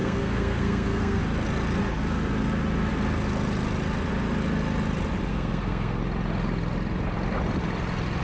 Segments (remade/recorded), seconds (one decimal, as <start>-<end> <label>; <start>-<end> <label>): 0.0-1.2 remade; 1.2-5.3 recorded; 5.3-6.0 remade; 6.0-8.2 recorded